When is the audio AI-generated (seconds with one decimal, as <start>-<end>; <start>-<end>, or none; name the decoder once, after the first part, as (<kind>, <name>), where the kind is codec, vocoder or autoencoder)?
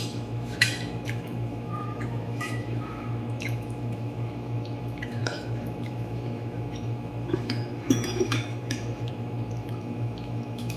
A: 0.0-10.8 (autoencoder, DAC-VAE)